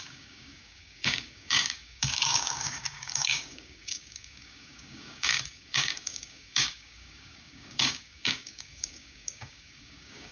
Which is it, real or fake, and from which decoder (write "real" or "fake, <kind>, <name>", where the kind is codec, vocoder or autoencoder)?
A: fake, codec, DAC